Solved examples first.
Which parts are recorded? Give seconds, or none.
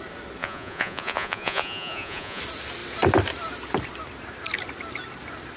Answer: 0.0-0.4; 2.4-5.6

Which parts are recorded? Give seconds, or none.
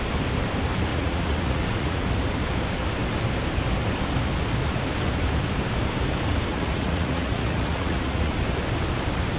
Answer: 0.0-0.9; 2.1-6.5; 8.4-9.4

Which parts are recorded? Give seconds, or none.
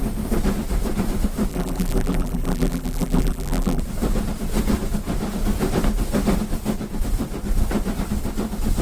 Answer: 0.0-1.5; 3.8-8.8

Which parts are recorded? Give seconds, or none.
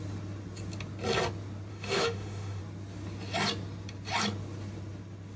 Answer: 0.0-1.7; 2.6-5.4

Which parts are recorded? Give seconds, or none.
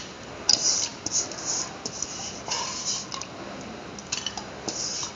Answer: 0.0-5.2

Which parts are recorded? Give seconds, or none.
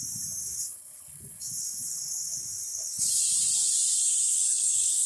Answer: 0.0-0.4; 3.1-4.3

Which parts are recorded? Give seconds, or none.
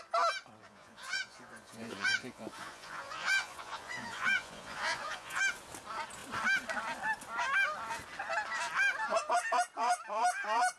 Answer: 0.0-0.6; 5.4-10.8